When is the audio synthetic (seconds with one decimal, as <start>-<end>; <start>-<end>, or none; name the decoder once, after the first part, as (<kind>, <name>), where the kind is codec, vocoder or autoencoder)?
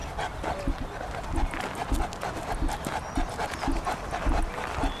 none